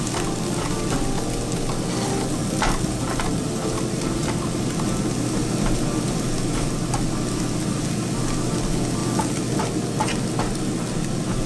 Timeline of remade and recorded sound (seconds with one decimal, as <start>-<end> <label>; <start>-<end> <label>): 0.0-2.4 recorded; 2.4-4.6 remade; 4.6-11.5 recorded